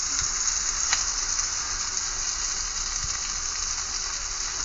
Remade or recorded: recorded